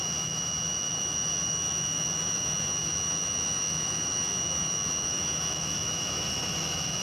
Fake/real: fake